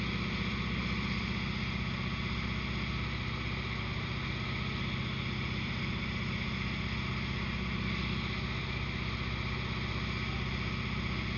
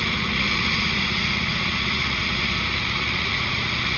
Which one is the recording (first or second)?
first